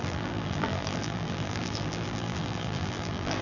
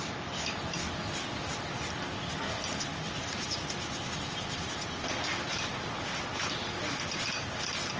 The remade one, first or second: first